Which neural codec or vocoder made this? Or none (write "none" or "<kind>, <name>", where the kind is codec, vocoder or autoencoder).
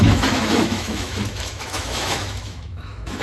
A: autoencoder, DAC-VAE